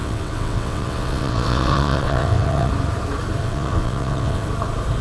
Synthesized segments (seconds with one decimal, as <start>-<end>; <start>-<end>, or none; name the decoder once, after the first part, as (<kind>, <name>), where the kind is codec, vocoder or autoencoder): 0.0-2.7 (vocoder, WaveNeXt); 3.4-4.5